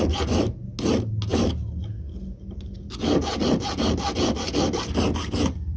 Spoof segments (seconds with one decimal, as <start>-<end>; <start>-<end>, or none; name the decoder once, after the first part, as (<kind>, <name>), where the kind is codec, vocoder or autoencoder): none